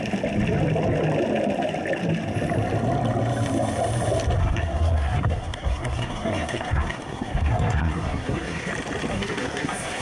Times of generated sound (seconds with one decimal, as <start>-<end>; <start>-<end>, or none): 4.4-8.7; 9.1-10.0